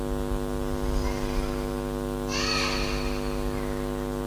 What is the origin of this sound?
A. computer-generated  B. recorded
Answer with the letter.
B